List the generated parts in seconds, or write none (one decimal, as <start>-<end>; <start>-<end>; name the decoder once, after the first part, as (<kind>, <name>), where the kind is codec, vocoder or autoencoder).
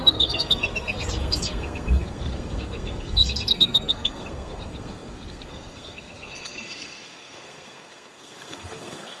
0.0-9.2 (codec, SNAC)